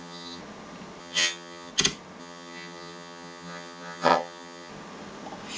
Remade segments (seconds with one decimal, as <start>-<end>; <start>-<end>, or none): 0.0-0.4; 1.0-1.7; 2.2-4.7